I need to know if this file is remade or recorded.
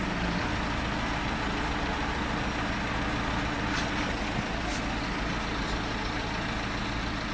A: recorded